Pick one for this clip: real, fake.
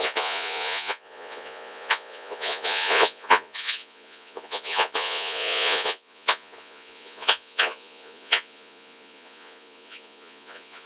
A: fake